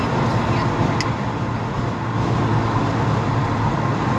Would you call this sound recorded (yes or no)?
yes